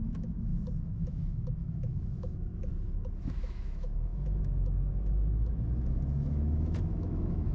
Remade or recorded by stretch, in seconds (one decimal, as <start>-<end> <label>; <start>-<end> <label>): 0.0-2.7 remade; 2.7-3.2 recorded; 3.2-7.5 remade